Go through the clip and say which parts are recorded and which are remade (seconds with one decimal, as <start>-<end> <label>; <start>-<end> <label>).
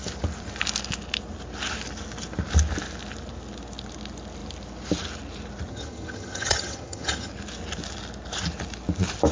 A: 0.0-5.7 recorded; 5.7-7.3 remade; 7.3-9.3 recorded